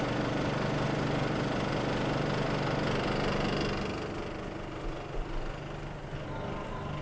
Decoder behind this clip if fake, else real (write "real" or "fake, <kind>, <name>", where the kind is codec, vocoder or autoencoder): real